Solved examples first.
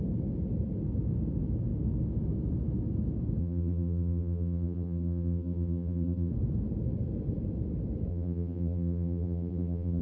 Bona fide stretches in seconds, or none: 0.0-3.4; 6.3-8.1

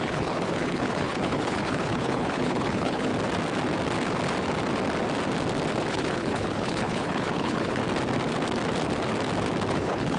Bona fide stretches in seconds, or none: 3.1-5.9; 7.8-9.7